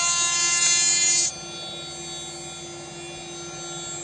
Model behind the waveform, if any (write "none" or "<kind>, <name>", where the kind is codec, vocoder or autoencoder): none